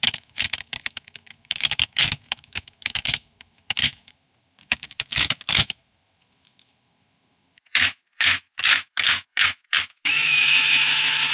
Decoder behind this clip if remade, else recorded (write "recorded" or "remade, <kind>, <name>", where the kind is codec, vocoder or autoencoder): remade, autoencoder, DAC-VAE